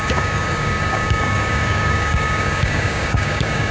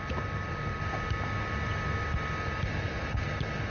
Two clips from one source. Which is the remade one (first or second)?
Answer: first